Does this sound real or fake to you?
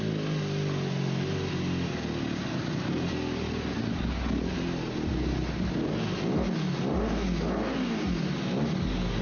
real